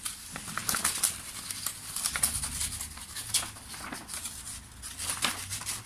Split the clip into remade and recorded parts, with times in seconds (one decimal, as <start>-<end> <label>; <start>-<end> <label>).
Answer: 0.0-5.9 recorded